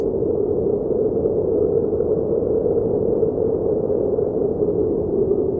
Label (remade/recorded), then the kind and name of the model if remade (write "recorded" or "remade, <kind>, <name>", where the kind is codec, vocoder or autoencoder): recorded